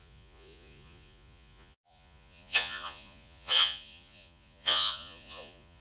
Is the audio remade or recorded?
remade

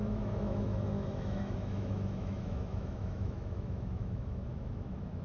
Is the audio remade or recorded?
remade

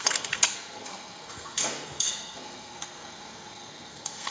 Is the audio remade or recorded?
remade